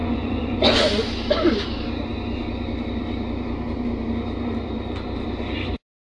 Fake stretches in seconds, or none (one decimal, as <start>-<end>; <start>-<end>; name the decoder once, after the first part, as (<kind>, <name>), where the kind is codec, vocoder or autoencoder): 0.0-0.8 (vocoder, Vocos)

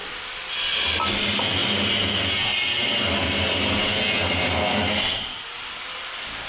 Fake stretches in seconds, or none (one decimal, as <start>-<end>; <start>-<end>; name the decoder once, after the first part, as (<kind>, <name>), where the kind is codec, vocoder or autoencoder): none